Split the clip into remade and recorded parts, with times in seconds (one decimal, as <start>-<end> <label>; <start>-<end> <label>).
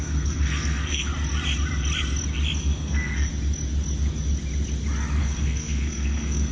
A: 0.0-1.1 remade; 1.1-2.6 recorded; 2.6-3.3 remade; 3.3-5.2 recorded; 5.2-6.5 remade